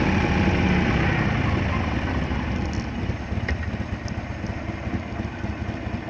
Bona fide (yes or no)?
yes